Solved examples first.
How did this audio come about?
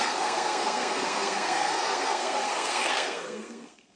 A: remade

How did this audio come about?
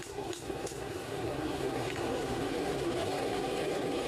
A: remade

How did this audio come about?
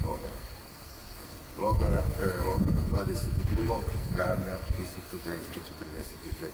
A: remade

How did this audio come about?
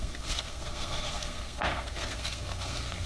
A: remade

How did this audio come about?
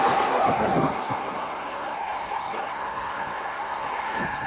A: remade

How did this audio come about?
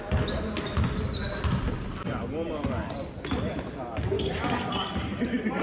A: recorded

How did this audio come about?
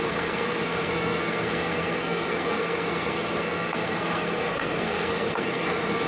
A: remade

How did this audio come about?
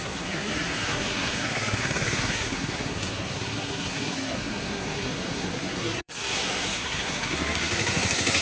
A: remade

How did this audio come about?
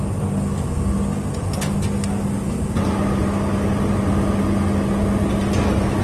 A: recorded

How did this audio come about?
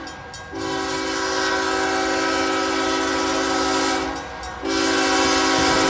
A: recorded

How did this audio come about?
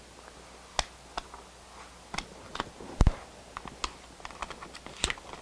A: recorded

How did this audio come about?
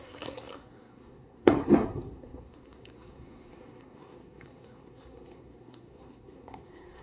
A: remade